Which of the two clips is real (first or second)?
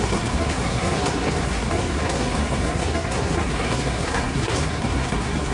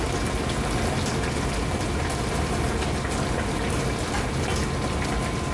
second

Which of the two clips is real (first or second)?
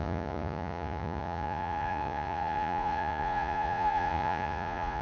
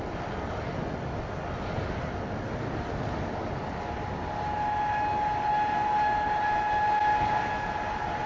second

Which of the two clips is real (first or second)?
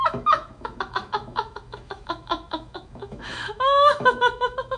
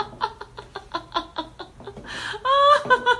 second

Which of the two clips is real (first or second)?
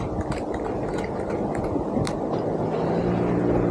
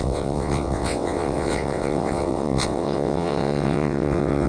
first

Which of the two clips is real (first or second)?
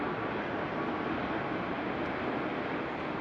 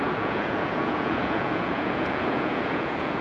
first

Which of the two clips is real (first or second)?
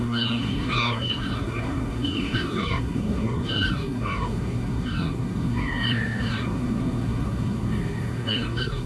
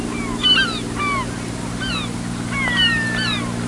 second